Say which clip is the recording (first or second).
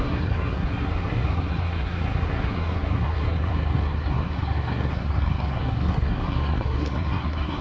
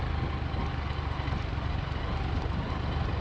second